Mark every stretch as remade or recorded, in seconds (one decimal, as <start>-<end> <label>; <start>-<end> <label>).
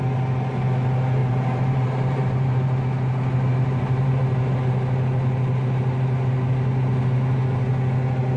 0.0-1.2 recorded; 1.2-2.8 remade; 2.8-3.5 recorded; 3.5-4.2 remade; 4.2-8.4 recorded